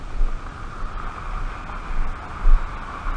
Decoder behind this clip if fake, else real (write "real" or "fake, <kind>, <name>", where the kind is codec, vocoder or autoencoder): real